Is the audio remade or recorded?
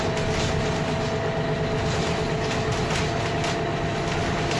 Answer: recorded